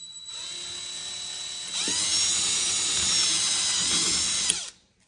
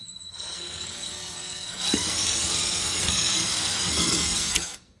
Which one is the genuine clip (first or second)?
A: first